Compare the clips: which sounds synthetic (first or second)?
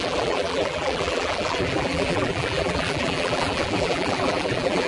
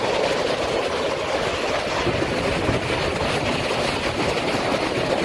first